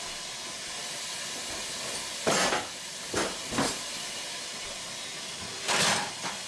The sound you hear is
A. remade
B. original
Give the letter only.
B